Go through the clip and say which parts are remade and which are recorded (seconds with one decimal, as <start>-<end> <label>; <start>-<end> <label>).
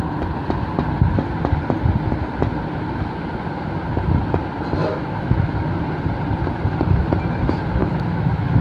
0.0-4.9 recorded; 4.9-5.6 remade; 5.6-7.8 recorded; 7.8-8.6 remade